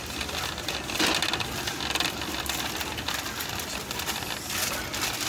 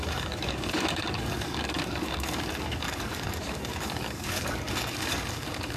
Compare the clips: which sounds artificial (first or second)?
second